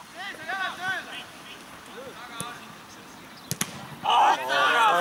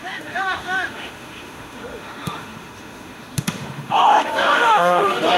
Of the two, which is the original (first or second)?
first